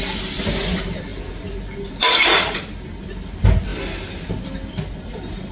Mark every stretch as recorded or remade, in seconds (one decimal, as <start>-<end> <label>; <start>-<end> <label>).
0.0-5.5 recorded